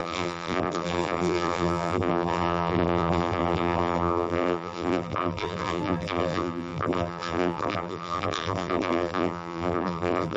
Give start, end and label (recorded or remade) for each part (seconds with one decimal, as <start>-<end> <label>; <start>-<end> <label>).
0.0-10.4 remade